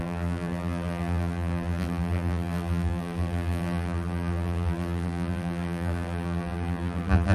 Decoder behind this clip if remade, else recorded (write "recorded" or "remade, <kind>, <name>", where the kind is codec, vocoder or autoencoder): remade, vocoder, BigVGAN v2